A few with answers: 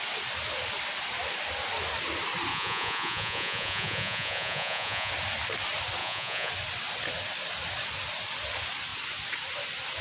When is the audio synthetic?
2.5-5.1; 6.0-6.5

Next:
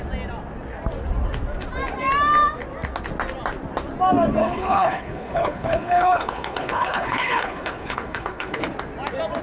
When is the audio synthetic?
4.4-8.6

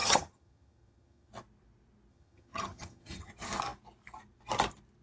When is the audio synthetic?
0.0-1.3; 2.1-3.3

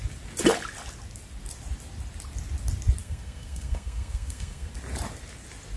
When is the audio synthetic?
3.0-4.7

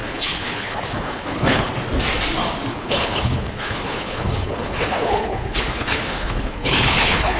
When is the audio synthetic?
0.0-1.7; 2.7-7.4